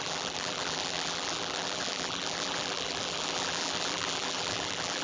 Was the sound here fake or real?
fake